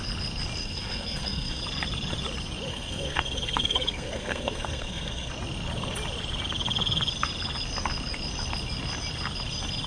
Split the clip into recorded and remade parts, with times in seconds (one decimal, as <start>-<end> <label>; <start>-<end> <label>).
0.0-0.6 recorded; 0.6-1.6 remade; 1.6-2.7 recorded; 2.7-5.3 remade; 5.3-9.9 recorded